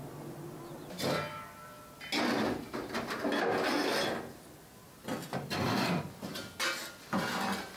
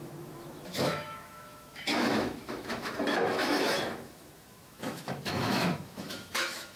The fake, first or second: second